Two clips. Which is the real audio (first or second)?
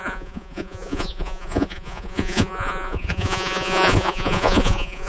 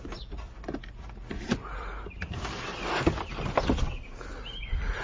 second